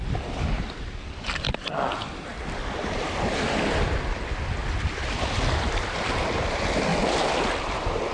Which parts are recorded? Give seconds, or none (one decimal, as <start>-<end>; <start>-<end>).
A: 0.0-2.3; 3.4-4.6; 6.1-8.1